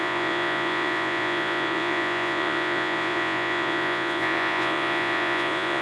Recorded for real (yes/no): no